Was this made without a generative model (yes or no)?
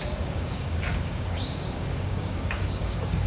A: no